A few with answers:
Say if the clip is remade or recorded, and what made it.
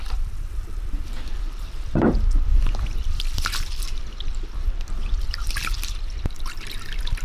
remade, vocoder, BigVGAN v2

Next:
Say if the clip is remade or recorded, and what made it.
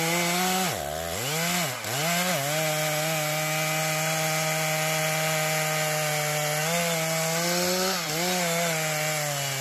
recorded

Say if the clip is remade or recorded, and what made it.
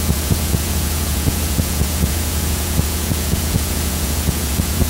remade, vocoder, Vocos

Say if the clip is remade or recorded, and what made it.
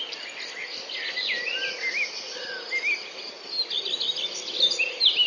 recorded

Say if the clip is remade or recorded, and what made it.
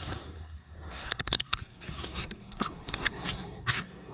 remade, codec, SNAC